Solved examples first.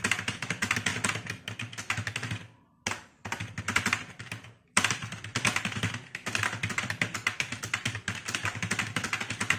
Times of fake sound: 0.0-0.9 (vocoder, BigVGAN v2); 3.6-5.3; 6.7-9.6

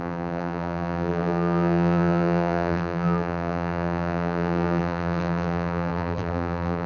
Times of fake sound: 0.0-6.9 (vocoder, BigVGAN v2)

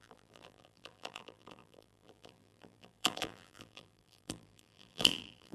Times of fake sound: 0.0-5.5 (vocoder, BigVGAN v2)

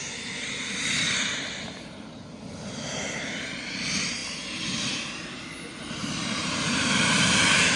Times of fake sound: 0.0-4.2 (vocoder, BigVGAN v2); 5.9-7.8

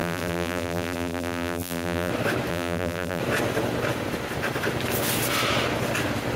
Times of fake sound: 0.0-2.1 (vocoder, BigVGAN v2); 2.5-3.2